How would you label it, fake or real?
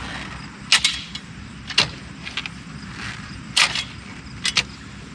real